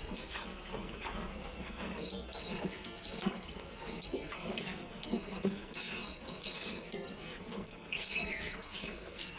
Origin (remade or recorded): remade